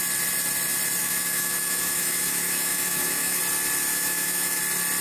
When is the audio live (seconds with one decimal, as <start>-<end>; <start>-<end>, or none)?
0.0-1.0; 3.4-3.9; 4.6-5.0